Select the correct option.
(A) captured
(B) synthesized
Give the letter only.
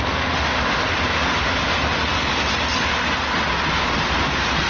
A